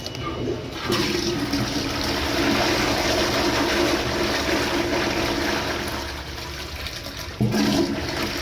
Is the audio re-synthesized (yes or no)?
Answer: no